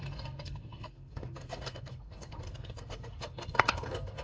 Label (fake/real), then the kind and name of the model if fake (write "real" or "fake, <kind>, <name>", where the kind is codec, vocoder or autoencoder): fake, codec, SNAC